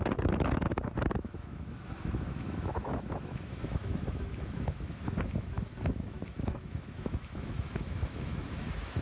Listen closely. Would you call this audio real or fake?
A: fake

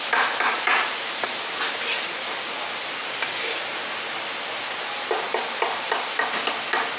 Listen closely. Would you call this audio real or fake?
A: real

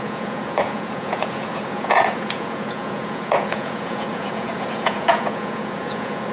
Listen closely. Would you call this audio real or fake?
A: fake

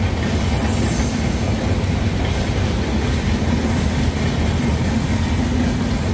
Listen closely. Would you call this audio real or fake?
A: real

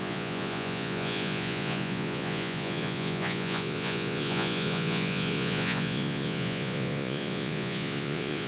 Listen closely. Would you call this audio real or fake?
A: fake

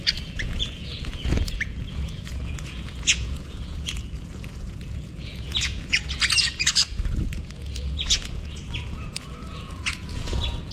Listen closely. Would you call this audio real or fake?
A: fake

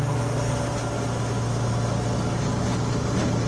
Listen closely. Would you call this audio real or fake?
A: real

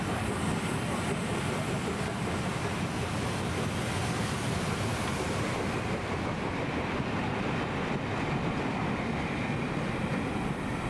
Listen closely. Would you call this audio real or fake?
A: real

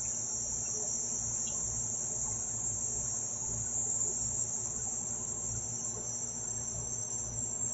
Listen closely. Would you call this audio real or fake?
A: real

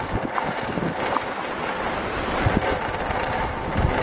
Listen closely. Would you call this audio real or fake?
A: real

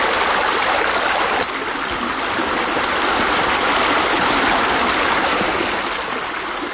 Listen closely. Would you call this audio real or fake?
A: real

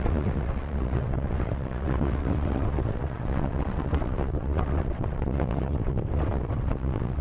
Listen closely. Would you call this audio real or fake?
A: fake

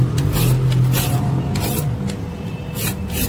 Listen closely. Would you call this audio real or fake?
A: real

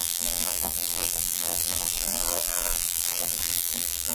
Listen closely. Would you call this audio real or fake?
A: fake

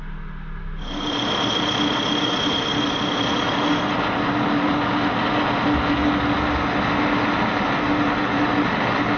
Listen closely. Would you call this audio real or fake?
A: real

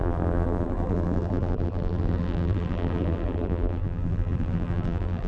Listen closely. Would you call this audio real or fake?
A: fake